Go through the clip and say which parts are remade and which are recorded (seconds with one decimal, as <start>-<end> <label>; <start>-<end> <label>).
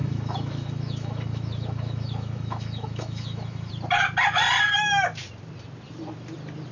0.0-3.7 remade; 3.7-6.7 recorded